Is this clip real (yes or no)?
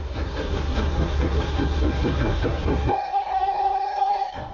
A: no